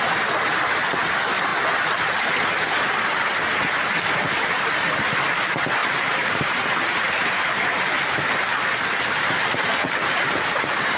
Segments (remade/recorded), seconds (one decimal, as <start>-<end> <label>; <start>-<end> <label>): 0.0-5.8 recorded; 5.8-8.3 remade; 8.3-11.0 recorded